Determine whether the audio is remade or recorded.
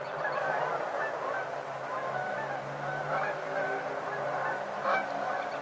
recorded